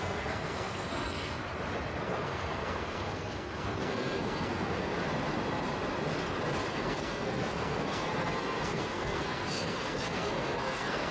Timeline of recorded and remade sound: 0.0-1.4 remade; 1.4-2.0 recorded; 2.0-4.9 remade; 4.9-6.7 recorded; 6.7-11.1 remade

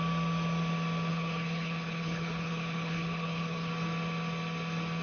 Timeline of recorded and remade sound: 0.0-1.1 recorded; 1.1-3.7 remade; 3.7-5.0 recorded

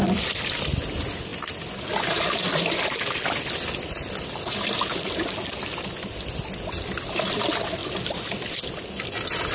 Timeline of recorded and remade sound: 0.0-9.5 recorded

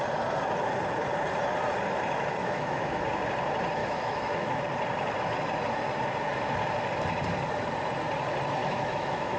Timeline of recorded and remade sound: 0.0-2.4 recorded; 2.4-3.0 remade; 3.0-3.8 recorded; 3.8-4.6 remade; 4.6-8.6 recorded; 8.6-9.4 remade

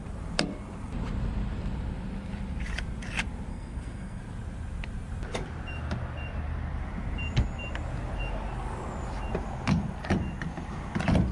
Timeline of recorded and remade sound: 0.0-3.5 recorded; 3.5-4.2 remade; 4.2-11.3 recorded

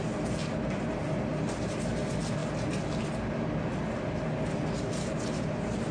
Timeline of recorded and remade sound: 0.0-5.9 recorded

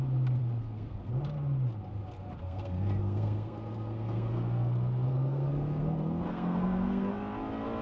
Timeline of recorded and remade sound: 0.0-0.4 recorded; 0.4-1.1 remade; 1.1-2.4 recorded; 2.4-7.1 remade; 7.1-7.8 recorded